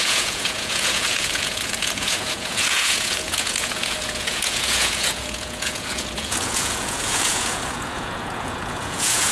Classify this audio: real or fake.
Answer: fake